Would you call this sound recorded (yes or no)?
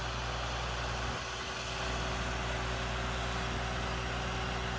yes